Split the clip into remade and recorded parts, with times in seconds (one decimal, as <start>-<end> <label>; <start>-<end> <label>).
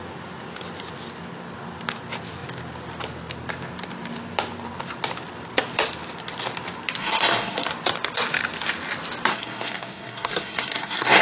0.0-7.0 recorded; 7.0-7.7 remade; 7.7-9.3 recorded; 9.3-11.2 remade